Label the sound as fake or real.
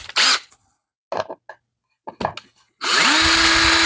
real